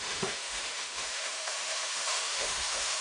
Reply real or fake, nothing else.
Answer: fake